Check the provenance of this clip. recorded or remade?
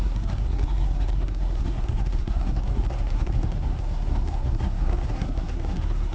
remade